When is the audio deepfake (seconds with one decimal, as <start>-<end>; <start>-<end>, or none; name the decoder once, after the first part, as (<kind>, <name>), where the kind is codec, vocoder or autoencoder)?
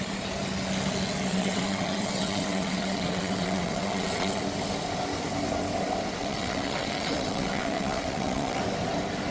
1.3-4.4 (vocoder, WaveNeXt); 6.2-8.6